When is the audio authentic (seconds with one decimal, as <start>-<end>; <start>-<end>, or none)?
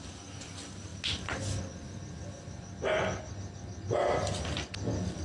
0.0-5.2